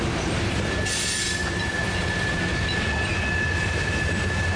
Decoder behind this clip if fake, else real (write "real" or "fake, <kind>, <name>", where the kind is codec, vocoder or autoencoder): real